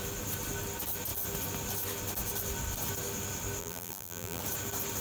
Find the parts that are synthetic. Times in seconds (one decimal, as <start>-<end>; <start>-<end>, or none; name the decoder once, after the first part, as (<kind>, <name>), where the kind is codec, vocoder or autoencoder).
3.6-4.4 (vocoder, BigVGAN v2)